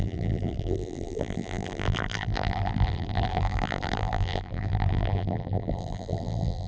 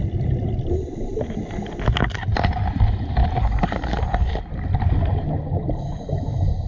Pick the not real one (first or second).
first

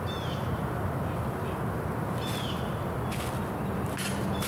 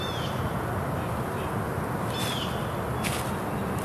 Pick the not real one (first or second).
first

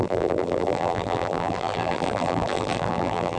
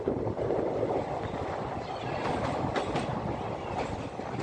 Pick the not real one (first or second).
first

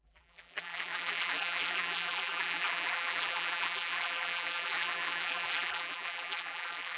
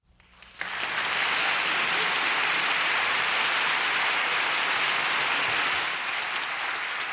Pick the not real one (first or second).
first